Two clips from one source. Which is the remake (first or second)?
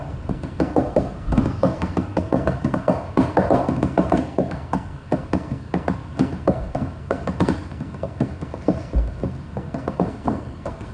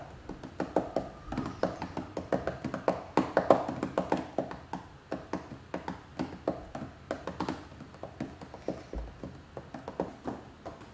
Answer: first